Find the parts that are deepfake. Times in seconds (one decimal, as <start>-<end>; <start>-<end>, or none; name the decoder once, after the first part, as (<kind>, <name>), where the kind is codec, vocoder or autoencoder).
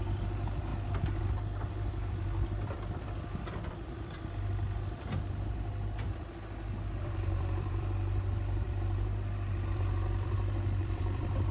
0.0-0.7 (vocoder, BigVGAN v2); 1.2-11.5